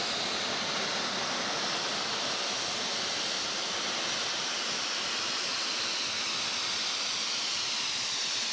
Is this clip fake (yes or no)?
no